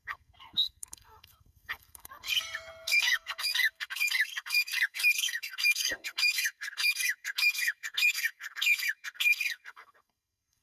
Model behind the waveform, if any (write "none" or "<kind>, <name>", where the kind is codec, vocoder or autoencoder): codec, SNAC